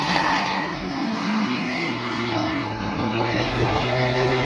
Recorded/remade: remade